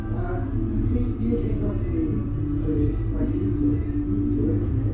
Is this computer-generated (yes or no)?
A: no